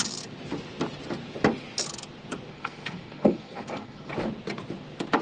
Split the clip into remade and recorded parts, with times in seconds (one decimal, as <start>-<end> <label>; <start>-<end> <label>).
0.0-2.5 recorded; 2.5-4.1 remade; 4.1-5.2 recorded